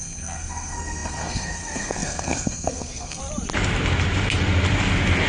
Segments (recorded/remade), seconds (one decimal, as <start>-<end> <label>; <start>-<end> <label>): 0.0-3.2 remade; 3.2-5.3 recorded

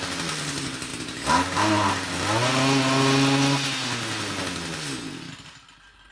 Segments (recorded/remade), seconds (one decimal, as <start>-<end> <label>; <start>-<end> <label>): 0.0-6.1 recorded

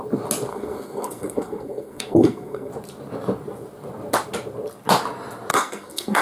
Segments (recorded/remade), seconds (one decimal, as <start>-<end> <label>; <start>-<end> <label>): 0.0-0.5 recorded; 0.5-2.7 remade; 2.7-5.5 recorded; 5.5-6.2 remade